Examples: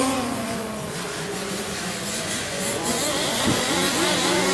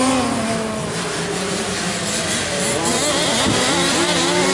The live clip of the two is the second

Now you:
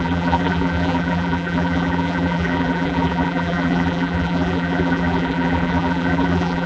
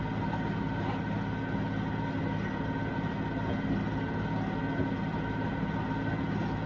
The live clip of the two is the second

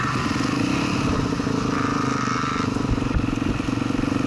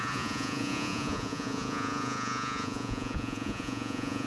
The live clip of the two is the first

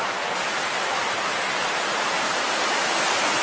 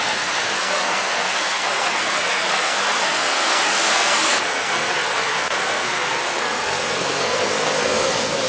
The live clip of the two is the first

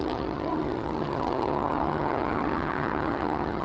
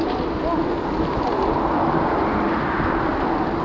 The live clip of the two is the second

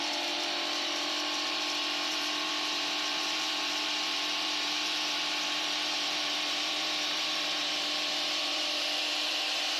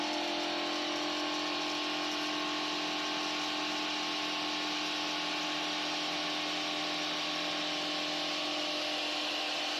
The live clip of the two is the second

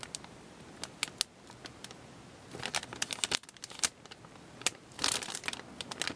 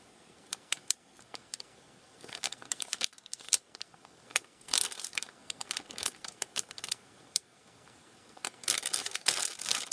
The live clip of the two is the first